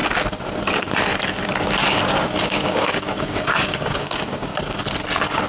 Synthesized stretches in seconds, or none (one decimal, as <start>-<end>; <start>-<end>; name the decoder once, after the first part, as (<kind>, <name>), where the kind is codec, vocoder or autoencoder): 2.4-4.5 (codec, DAC)